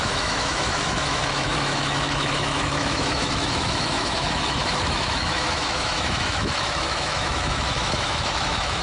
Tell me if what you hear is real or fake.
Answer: fake